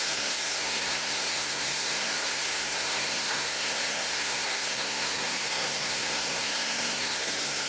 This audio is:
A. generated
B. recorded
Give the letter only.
A